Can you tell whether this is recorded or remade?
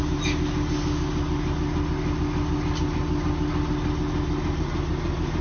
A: recorded